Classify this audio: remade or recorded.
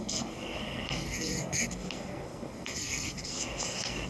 remade